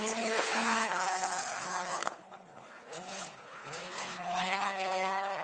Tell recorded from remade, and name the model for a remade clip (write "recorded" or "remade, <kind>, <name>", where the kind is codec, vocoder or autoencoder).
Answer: remade, codec, HILCodec